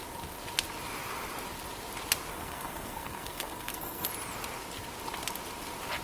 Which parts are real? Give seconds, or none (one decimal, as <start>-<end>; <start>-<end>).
0.0-2.3; 4.1-6.0

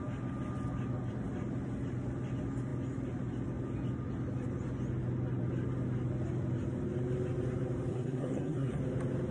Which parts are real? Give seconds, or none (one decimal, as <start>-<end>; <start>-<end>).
0.0-7.9; 8.8-9.3

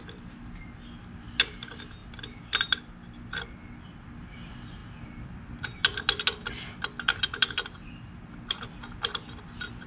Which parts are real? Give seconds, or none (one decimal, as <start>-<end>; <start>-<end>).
0.0-9.9

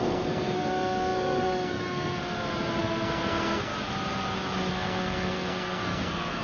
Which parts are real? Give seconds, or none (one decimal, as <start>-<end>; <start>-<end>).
2.2-2.8; 3.7-4.7

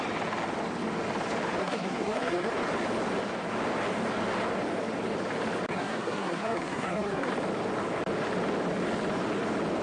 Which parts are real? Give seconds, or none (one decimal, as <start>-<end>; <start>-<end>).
0.0-1.6; 2.5-5.7; 7.3-9.8

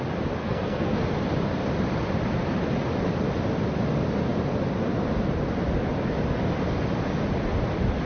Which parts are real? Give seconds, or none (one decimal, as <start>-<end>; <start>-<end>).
0.0-0.4; 1.0-8.1

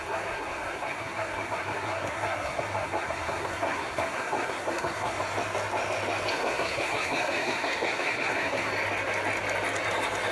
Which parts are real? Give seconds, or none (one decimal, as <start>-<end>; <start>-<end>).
5.2-6.3; 8.7-10.3

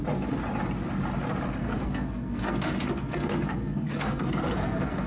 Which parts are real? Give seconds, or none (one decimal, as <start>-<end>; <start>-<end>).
0.0-1.6